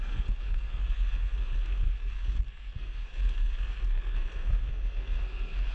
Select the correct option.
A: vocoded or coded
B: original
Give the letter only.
A